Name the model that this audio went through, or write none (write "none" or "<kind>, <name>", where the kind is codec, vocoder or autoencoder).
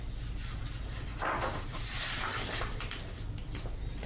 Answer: none